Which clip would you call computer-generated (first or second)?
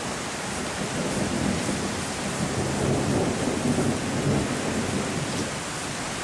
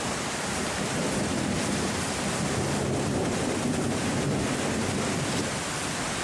second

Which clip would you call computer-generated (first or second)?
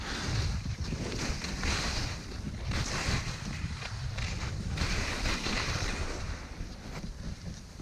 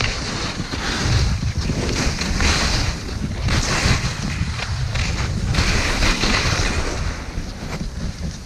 first